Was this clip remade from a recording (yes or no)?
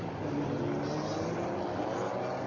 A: no